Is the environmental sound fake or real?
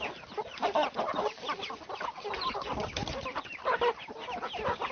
real